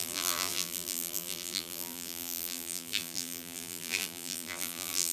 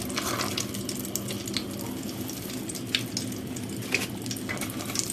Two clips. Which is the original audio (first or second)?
second